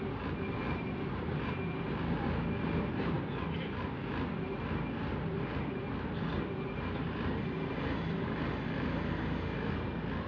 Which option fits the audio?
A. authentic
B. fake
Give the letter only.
A